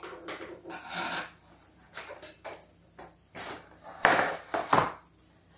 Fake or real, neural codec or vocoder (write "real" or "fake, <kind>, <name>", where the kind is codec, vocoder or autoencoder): fake, vocoder, BigVGAN v2